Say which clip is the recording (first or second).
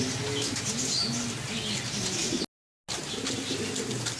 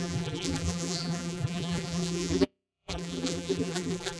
first